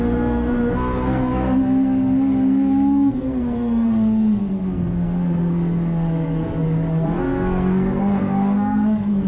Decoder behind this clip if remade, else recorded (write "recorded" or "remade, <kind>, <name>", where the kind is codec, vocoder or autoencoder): remade, codec, SNAC